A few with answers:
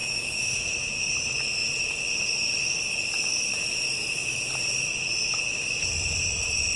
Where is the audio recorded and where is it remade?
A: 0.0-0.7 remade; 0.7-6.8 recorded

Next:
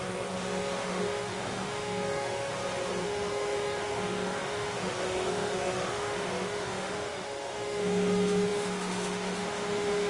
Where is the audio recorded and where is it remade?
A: 0.0-2.5 remade; 2.5-3.0 recorded; 3.0-10.1 remade

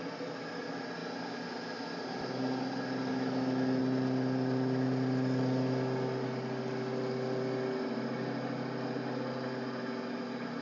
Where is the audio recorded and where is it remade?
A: 0.0-3.1 recorded; 3.1-3.8 remade; 3.8-10.6 recorded

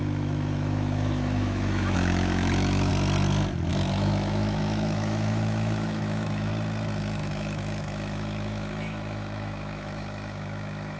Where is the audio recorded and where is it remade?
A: 0.0-2.9 remade; 2.9-3.7 recorded; 3.7-6.5 remade; 6.5-7.0 recorded; 7.0-11.0 remade